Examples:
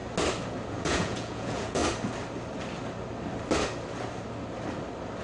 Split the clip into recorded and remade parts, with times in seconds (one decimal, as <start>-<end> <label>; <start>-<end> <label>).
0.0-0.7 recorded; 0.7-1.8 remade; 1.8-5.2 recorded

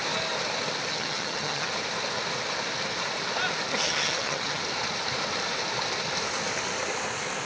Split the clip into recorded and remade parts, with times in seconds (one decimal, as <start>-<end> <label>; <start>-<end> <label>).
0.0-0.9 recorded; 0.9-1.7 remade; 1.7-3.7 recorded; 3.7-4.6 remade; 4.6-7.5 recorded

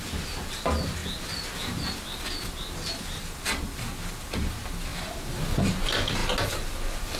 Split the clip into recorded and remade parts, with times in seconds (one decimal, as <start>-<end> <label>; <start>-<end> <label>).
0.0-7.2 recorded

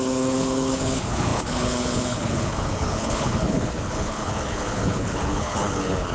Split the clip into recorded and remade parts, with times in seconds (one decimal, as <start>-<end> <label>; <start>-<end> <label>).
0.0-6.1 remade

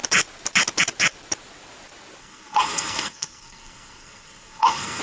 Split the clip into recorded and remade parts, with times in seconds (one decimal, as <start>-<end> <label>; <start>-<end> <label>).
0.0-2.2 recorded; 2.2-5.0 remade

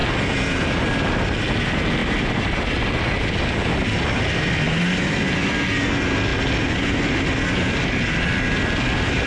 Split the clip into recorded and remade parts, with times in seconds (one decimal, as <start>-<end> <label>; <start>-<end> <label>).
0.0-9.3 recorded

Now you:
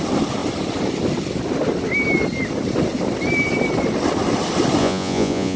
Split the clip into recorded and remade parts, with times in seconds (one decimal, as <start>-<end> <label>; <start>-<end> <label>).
0.0-4.8 recorded; 4.8-5.6 remade